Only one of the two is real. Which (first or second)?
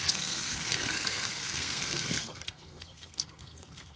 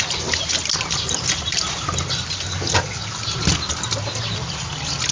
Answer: second